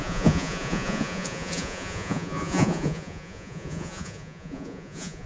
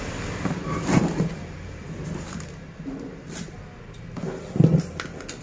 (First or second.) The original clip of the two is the second